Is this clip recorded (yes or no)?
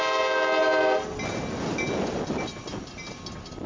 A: yes